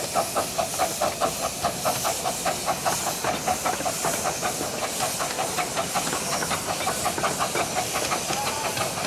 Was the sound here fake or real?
real